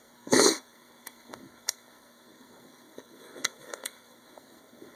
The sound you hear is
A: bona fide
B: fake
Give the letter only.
B